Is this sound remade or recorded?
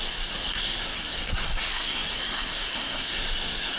remade